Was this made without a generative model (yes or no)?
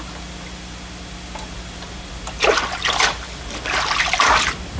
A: yes